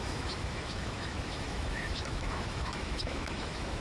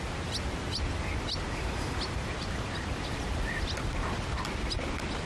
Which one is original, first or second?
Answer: second